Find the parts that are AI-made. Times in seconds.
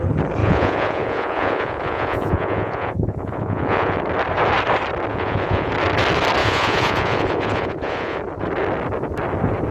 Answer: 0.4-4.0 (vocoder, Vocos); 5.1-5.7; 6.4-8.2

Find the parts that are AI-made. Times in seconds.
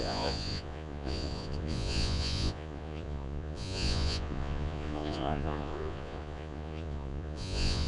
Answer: 0.0-7.9 (vocoder, Vocos)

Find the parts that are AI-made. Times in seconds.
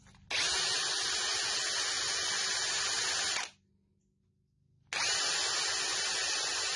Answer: none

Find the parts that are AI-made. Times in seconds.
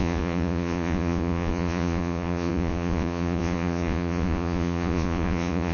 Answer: 0.0-5.7 (vocoder, Vocos)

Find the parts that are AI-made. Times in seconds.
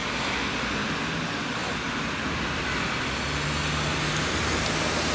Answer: none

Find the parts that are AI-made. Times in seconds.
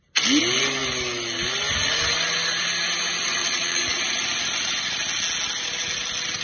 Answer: 3.4-4.0 (vocoder, Vocos)